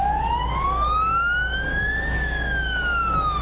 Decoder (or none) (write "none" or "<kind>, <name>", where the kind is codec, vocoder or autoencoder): codec, DAC